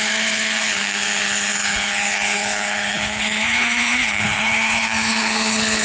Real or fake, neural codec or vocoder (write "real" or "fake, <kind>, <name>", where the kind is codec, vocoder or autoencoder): fake, codec, HILCodec